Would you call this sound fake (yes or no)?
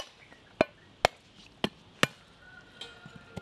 no